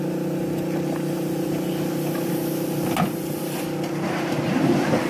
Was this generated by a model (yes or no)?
no